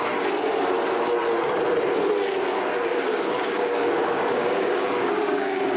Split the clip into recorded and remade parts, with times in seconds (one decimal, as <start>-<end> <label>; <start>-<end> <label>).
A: 0.0-2.9 recorded; 2.9-5.8 remade